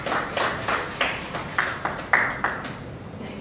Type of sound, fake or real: real